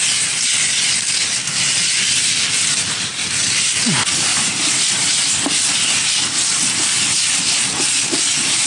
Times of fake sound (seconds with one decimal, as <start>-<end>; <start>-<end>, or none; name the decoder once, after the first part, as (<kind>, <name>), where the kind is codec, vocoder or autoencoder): 4.3-8.2 (vocoder, BigVGAN v2)